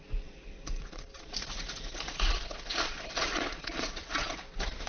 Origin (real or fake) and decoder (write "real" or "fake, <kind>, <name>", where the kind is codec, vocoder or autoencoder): fake, vocoder, Vocos